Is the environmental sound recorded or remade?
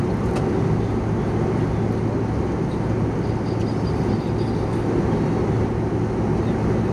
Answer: recorded